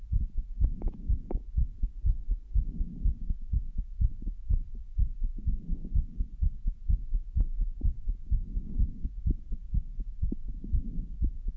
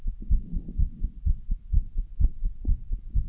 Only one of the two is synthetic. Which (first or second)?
first